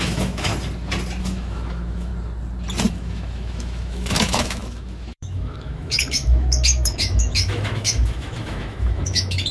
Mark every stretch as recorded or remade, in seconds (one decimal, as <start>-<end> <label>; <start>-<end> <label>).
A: 0.0-0.5 remade; 0.5-1.2 recorded; 1.2-2.1 remade; 2.1-2.9 recorded; 2.9-9.5 remade